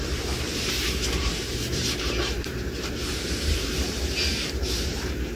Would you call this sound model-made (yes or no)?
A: yes